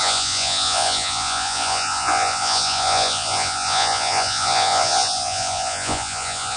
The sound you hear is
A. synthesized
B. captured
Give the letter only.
A